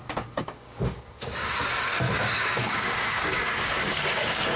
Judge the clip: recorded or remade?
remade